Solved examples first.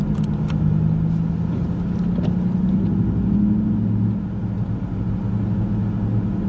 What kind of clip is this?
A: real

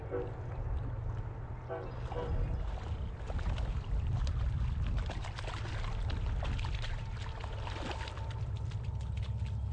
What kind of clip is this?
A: real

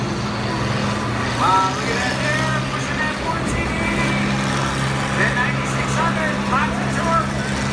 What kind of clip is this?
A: real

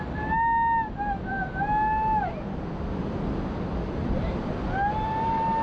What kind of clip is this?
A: real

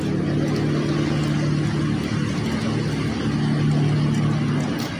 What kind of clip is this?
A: real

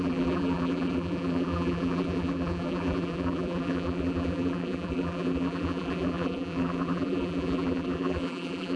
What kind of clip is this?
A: fake